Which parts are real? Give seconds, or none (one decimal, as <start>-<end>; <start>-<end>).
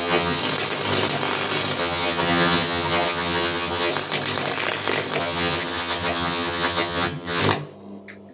0.4-1.8; 3.9-5.2; 7.4-8.3